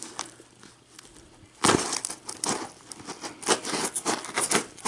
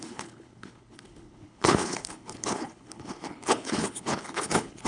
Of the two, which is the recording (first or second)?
first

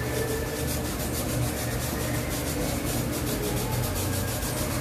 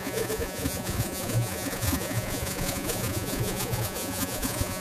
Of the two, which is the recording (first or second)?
first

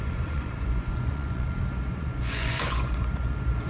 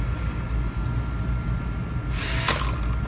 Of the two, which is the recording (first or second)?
second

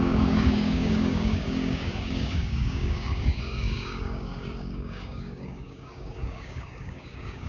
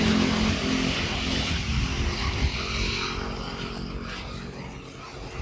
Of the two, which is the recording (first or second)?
second